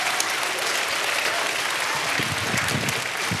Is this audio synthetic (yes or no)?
no